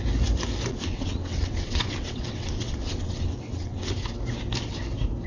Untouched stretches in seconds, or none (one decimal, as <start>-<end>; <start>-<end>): 0.0-0.7; 3.9-5.3

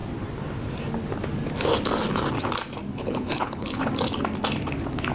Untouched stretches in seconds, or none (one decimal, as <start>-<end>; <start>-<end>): 0.0-2.9; 3.9-5.1

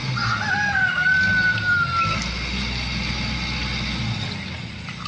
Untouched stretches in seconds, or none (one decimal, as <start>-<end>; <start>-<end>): 0.0-5.1

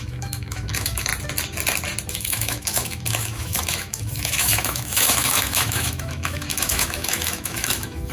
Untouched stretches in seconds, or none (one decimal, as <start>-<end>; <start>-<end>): 1.1-2.1

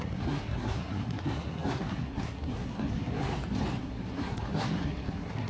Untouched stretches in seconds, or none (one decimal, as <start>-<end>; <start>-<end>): 3.3-3.8